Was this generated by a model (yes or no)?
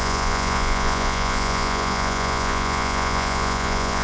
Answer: yes